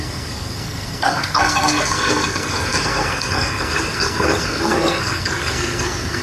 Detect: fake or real fake